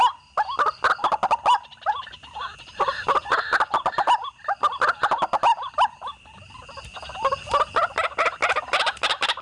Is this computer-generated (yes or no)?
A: no